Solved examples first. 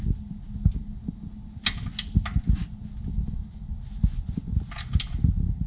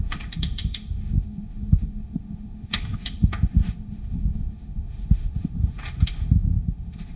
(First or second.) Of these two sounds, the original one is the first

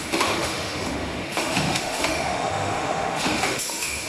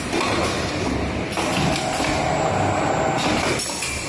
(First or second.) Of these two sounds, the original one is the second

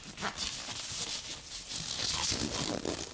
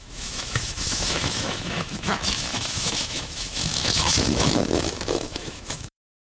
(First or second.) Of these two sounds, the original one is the first